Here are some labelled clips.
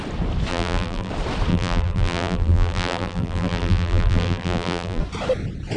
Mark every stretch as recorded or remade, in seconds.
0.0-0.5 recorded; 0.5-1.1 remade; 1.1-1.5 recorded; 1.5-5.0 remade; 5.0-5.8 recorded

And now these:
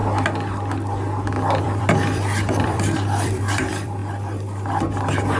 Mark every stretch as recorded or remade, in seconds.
0.0-1.6 recorded; 1.6-4.0 remade; 4.0-5.0 recorded; 5.0-5.4 remade

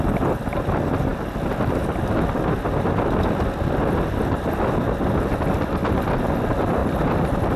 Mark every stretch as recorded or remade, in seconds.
0.0-7.6 recorded

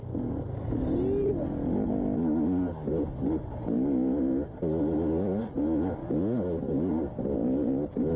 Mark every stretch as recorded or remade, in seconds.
0.0-8.2 recorded

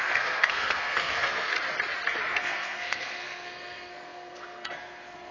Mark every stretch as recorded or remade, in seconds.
0.0-1.5 remade; 1.5-2.4 recorded; 2.4-5.3 remade

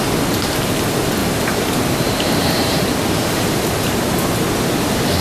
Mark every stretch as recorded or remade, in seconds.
0.0-1.2 recorded; 1.2-4.3 remade; 4.3-5.2 recorded

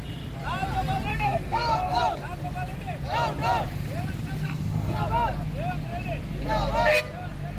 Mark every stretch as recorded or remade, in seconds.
0.0-1.1 recorded; 1.1-2.0 remade; 2.0-4.4 recorded; 4.4-5.0 remade; 5.0-7.6 recorded